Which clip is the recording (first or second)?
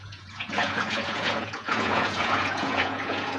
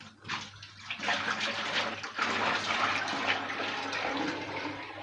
second